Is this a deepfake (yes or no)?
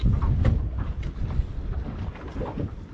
no